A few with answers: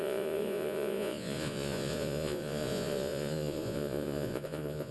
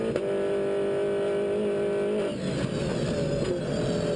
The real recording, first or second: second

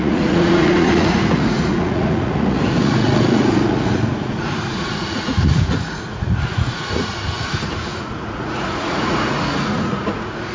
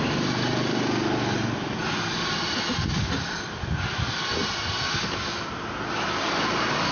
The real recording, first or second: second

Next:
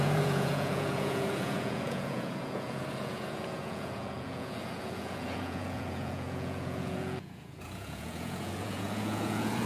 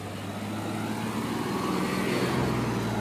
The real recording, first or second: second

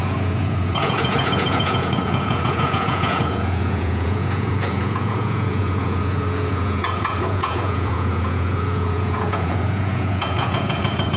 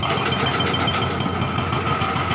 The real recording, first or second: second